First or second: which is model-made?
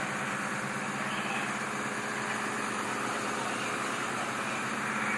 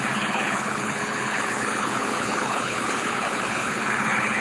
second